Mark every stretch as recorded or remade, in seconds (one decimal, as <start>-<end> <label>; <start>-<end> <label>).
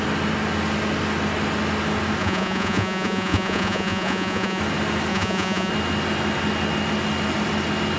0.0-2.2 recorded; 2.2-4.6 remade; 4.6-5.1 recorded; 5.1-5.7 remade; 5.7-8.0 recorded